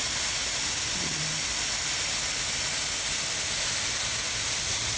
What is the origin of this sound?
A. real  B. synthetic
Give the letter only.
A